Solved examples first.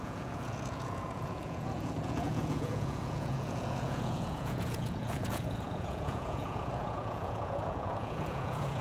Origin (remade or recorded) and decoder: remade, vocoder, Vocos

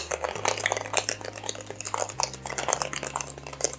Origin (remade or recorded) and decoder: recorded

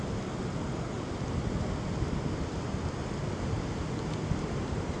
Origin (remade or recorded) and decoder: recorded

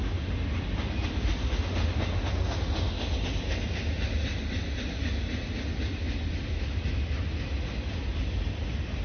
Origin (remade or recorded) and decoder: recorded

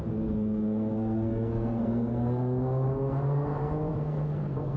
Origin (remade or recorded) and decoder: remade, codec, SNAC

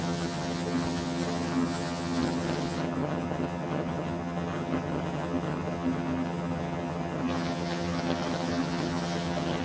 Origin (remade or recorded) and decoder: remade, vocoder, HiFi-GAN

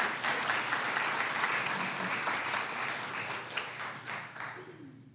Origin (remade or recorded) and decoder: recorded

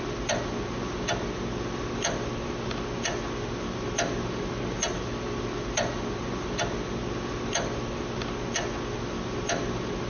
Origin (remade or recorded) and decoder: recorded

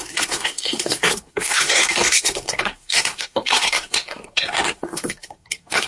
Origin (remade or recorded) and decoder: remade, codec, SNAC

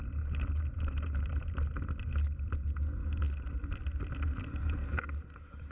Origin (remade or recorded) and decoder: recorded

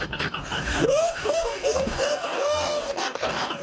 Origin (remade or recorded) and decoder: remade, codec, DAC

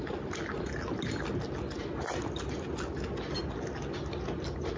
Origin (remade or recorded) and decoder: recorded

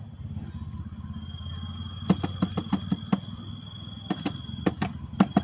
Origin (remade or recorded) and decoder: recorded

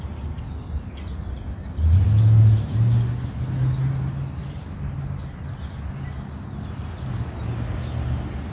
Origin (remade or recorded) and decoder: recorded